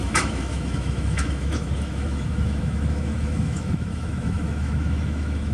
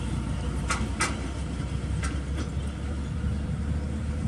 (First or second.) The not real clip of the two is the first